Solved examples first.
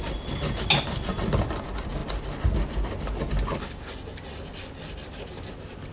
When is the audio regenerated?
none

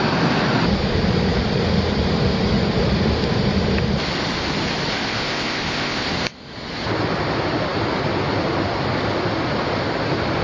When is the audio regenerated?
4.9-6.1 (codec, ZipCodec)

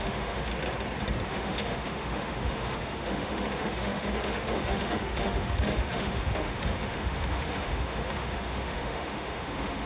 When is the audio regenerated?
0.0-0.5 (autoencoder, DAC-VAE); 1.3-9.9

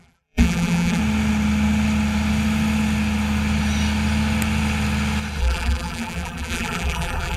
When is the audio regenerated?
0.0-1.0 (vocoder, BigVGAN v2); 5.4-7.4

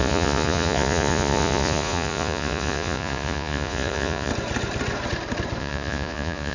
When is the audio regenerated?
0.0-4.3 (vocoder, Vocos); 5.6-6.5

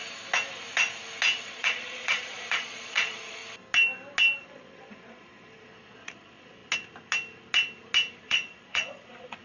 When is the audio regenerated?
1.4-3.4 (vocoder, Vocos); 4.4-6.6; 8.2-9.4